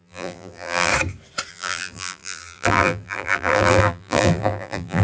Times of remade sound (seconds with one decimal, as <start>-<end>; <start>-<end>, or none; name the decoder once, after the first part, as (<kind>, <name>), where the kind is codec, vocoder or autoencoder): 0.0-0.9 (vocoder, BigVGAN v2); 1.5-5.0